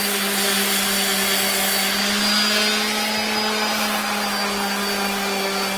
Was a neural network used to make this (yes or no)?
no